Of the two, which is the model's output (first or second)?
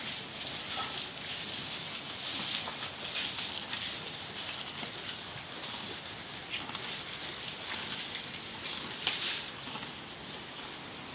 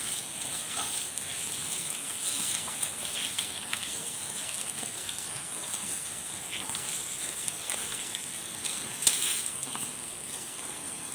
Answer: second